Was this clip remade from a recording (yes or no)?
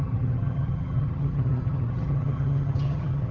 yes